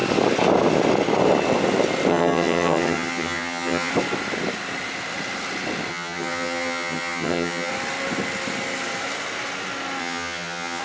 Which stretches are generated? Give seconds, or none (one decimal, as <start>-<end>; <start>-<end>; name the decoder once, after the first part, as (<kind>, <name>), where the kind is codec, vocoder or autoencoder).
2.1-3.9 (vocoder, HiFi-GAN); 5.9-7.7; 10.0-10.8